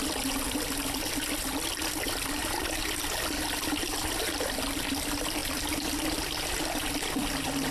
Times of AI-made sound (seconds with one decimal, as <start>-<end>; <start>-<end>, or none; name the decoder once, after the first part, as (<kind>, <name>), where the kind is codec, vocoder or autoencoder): 0.0-2.4 (vocoder, BigVGAN v2); 5.4-5.9